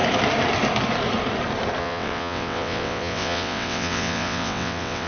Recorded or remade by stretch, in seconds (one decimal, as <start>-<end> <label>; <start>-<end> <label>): 0.0-1.8 recorded; 1.8-5.1 remade